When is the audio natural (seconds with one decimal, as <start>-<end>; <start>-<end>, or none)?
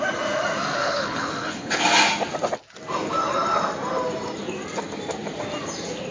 0.0-0.8; 1.8-6.1